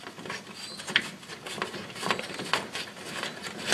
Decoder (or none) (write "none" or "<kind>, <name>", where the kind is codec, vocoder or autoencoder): none